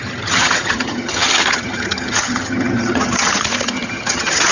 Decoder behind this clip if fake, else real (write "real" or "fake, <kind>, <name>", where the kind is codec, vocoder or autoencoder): fake, vocoder, HiFi-GAN